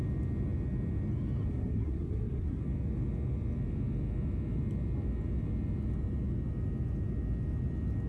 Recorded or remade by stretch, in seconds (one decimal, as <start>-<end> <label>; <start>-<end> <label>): 0.0-1.5 recorded; 1.5-2.6 remade; 2.6-8.1 recorded